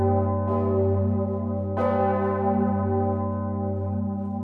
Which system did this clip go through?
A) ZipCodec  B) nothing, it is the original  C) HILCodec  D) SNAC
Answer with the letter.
B